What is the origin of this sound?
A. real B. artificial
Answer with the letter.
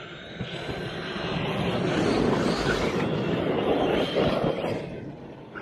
A